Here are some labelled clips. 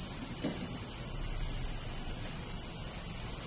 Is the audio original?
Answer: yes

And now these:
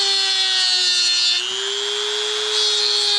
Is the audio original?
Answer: yes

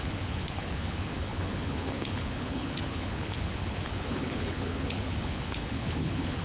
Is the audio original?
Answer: no